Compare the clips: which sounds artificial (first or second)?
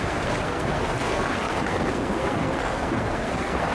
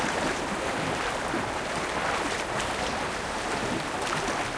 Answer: first